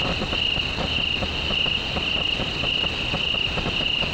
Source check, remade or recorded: recorded